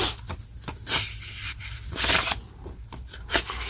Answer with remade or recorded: remade